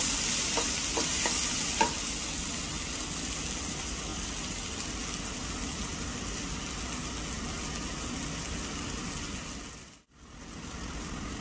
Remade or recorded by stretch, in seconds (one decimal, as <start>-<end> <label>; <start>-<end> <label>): 0.0-11.4 recorded